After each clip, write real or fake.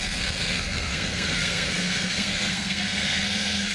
fake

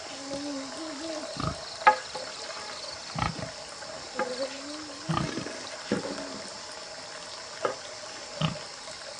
real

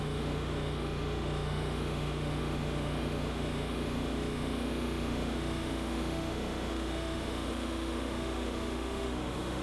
fake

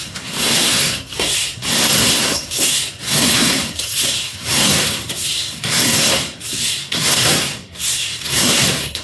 fake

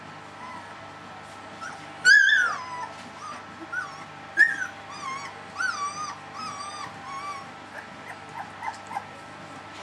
real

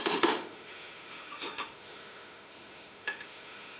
fake